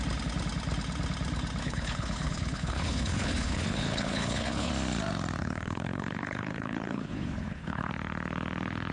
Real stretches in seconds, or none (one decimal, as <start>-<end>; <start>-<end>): 0.0-1.6; 4.7-5.4; 7.9-8.9